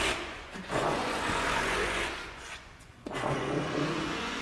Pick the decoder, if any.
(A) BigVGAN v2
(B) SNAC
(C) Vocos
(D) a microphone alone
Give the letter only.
C